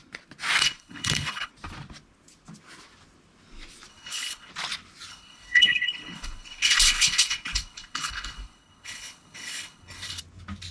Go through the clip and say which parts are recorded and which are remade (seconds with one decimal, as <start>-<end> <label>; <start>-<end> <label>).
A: 0.0-0.6 recorded; 0.6-1.5 remade; 1.5-3.9 recorded; 3.9-4.5 remade; 4.5-5.1 recorded; 5.1-10.2 remade; 10.2-10.7 recorded